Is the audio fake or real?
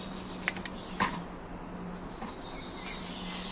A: real